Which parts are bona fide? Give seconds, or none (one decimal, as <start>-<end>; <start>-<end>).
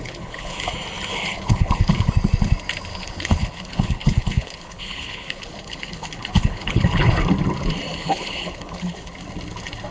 0.7-1.1; 2.1-2.9; 7.2-8.0; 9.1-9.9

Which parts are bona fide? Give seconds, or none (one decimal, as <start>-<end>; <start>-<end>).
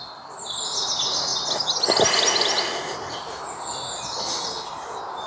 0.0-5.3